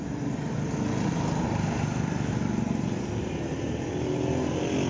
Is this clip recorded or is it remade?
recorded